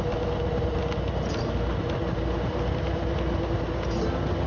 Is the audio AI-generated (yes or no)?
no